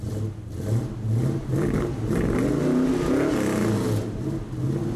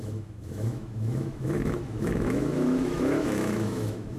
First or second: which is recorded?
first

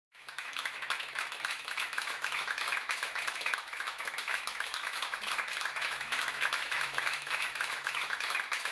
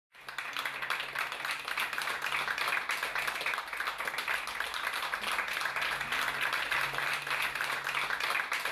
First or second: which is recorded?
second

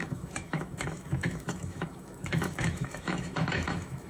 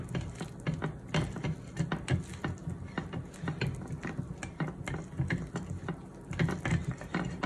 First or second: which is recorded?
second